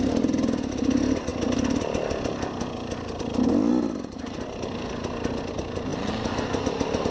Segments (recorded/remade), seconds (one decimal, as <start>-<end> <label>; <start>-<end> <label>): 0.0-7.1 recorded